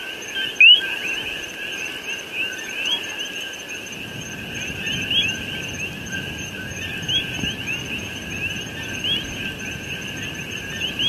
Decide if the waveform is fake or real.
real